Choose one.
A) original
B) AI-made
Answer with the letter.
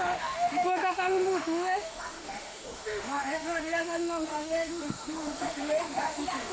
B